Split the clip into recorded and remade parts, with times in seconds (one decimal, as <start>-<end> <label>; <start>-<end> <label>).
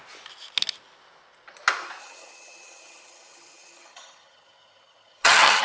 0.0-2.0 recorded; 2.0-5.6 remade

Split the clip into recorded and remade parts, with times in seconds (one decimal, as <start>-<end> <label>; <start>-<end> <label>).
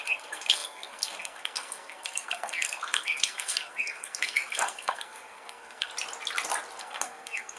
0.0-5.9 remade; 5.9-6.8 recorded; 6.8-7.6 remade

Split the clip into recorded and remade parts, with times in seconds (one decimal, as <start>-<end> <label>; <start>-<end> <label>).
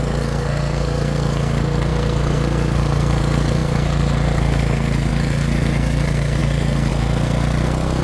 0.0-8.0 remade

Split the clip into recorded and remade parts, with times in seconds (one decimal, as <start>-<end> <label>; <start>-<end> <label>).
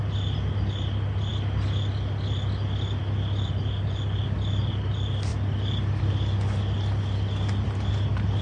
0.0-8.4 recorded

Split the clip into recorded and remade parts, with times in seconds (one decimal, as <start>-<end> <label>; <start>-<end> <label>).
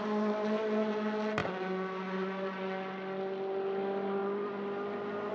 0.0-5.3 recorded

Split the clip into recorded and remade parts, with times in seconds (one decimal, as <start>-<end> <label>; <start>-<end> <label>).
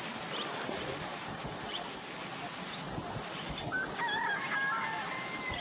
0.0-5.6 recorded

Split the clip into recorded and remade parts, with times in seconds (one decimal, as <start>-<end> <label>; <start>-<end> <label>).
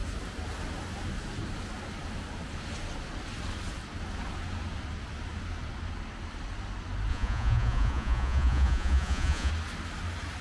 0.0-7.1 recorded; 7.1-9.5 remade; 9.5-10.4 recorded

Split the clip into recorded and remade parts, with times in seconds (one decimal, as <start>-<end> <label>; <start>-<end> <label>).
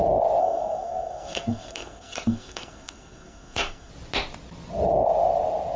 0.0-0.4 recorded; 0.4-3.9 remade; 3.9-5.8 recorded